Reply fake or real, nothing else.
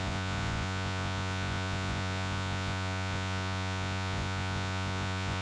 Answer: fake